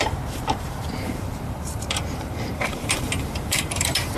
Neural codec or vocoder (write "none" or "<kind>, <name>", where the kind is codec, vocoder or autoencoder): vocoder, BigVGAN v2